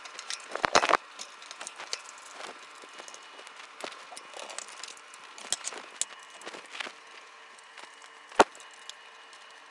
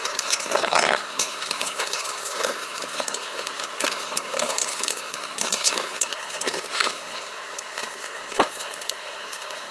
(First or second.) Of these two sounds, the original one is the first